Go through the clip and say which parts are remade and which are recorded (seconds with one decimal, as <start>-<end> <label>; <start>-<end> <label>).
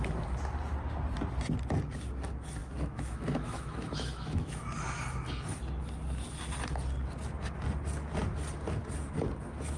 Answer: 0.0-2.6 recorded; 2.6-4.6 remade; 4.6-9.8 recorded